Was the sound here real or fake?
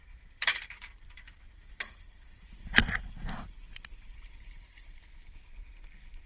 fake